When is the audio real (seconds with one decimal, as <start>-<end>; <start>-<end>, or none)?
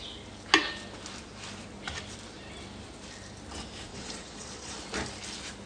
0.0-3.9; 4.8-5.7